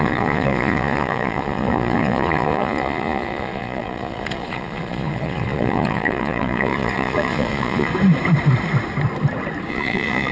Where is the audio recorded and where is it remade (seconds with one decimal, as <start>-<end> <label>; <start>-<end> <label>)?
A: 0.0-7.9 remade; 7.9-9.7 recorded; 9.7-10.3 remade